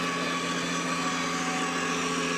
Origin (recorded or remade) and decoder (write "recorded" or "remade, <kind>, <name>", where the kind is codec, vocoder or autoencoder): recorded